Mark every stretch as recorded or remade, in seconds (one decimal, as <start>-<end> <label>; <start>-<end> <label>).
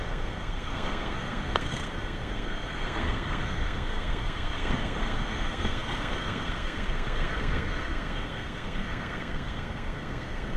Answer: 0.0-10.6 remade